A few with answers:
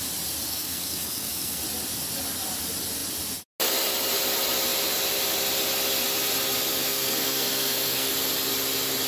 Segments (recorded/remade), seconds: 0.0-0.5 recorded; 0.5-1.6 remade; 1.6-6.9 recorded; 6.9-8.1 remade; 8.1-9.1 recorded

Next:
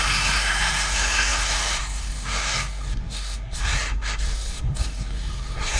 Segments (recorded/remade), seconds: 0.0-5.8 remade

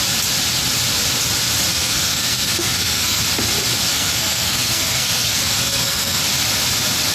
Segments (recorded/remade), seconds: 0.0-1.7 recorded; 1.7-3.2 remade; 3.2-3.9 recorded; 3.9-6.2 remade; 6.2-7.1 recorded

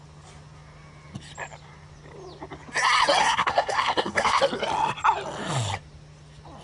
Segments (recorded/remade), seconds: 0.0-3.2 recorded; 3.2-4.4 remade; 4.4-6.6 recorded

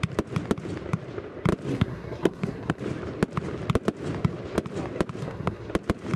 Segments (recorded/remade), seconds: 0.0-1.7 recorded; 1.7-2.8 remade; 2.8-5.2 recorded; 5.2-5.7 remade; 5.7-6.2 recorded

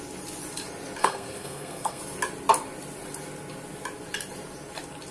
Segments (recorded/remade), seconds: 0.0-1.0 recorded; 1.0-2.0 remade; 2.0-5.1 recorded

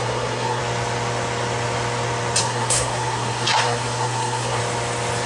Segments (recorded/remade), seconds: 0.0-0.6 remade; 0.6-2.4 recorded; 2.4-4.6 remade; 4.6-5.3 recorded

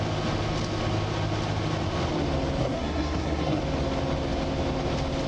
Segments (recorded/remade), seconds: 0.0-2.6 recorded; 2.6-3.6 remade; 3.6-5.3 recorded